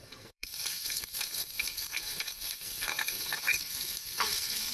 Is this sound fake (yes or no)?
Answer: yes